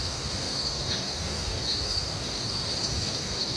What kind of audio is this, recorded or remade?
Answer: remade